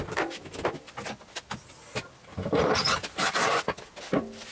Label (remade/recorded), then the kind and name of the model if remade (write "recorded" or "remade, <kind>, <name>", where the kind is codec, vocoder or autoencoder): recorded